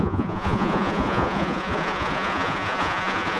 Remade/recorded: remade